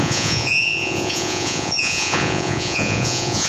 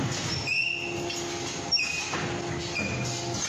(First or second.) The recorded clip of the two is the second